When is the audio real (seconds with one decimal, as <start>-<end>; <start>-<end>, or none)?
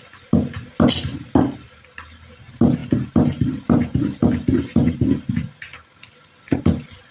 0.0-7.1